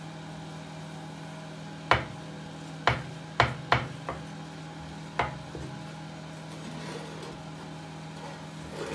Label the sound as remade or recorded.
recorded